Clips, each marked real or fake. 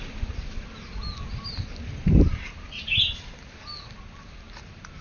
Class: real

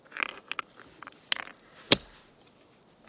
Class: real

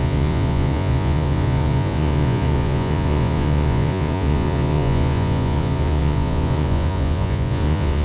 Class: fake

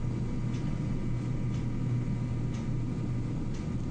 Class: real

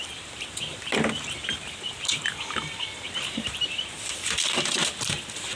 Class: real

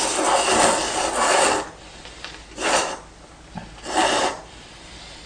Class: real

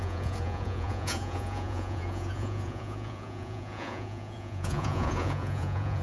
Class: fake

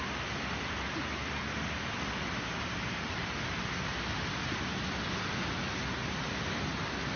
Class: real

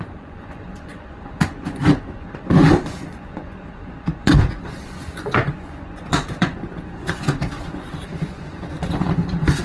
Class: fake